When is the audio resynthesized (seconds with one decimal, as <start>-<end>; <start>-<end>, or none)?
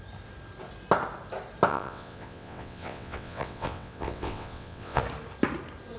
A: 1.7-5.0